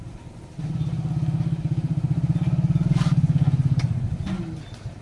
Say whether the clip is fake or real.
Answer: real